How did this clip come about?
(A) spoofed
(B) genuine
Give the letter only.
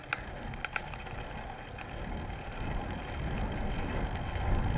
B